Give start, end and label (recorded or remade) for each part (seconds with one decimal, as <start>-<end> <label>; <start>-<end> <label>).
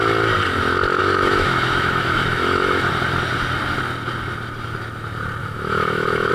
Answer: 0.0-1.0 recorded; 1.0-2.9 remade; 2.9-5.4 recorded; 5.4-6.3 remade